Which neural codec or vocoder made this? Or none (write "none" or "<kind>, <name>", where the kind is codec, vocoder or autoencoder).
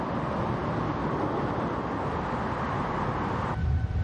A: none